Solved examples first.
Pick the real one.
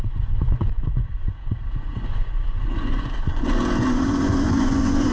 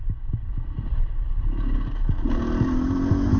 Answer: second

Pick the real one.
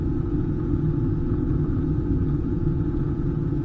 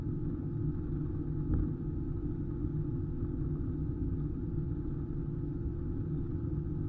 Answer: second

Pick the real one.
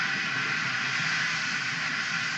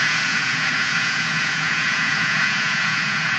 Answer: first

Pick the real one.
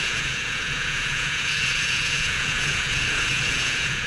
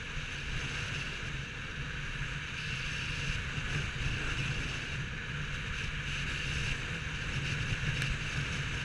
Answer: second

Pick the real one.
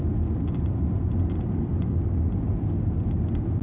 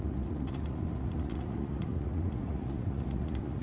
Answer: first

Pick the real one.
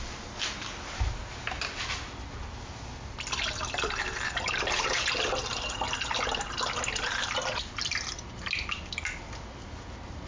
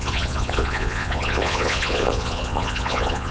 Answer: first